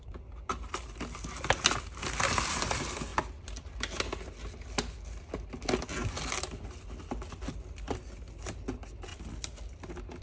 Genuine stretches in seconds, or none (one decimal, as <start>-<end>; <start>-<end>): 0.0-10.2